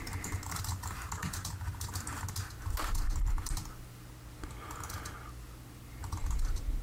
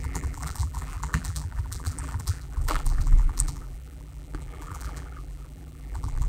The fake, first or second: second